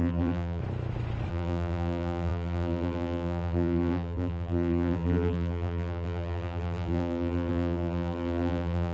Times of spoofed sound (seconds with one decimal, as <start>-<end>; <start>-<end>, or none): 0.0-0.6; 1.3-8.9